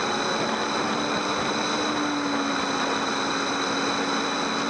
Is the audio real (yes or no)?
yes